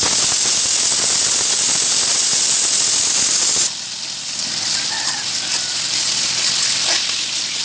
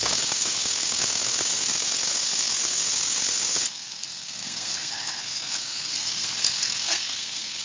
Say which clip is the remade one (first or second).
second